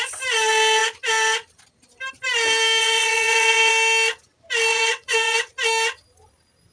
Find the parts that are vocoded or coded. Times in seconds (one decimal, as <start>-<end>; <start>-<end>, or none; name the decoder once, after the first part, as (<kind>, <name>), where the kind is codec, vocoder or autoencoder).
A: 2.8-3.7 (vocoder, WaveNeXt); 4.7-5.5